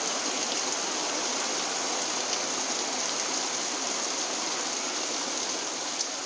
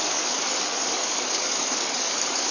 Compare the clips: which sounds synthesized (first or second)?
second